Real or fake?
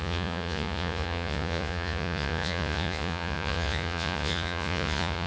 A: fake